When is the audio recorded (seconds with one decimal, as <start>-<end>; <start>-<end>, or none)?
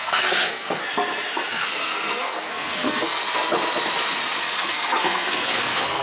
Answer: 0.8-1.5; 3.2-4.4